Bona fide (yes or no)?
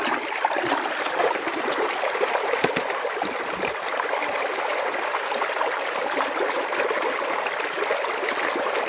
no